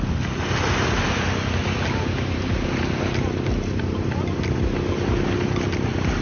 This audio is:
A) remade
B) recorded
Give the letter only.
B